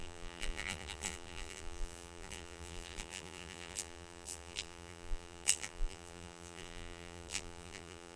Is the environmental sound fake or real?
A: fake